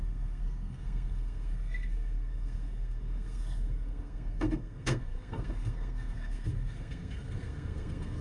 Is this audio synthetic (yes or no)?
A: yes